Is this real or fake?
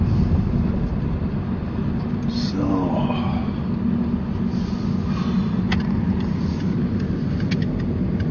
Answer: real